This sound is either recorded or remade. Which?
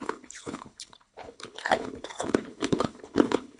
remade